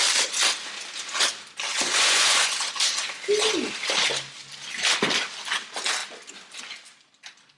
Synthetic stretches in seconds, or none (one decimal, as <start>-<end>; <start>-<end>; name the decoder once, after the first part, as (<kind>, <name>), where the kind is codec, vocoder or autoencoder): 1.7-2.5 (vocoder, Vocos)